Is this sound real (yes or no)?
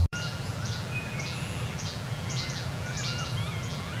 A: no